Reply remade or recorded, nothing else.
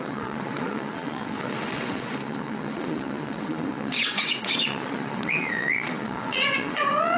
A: remade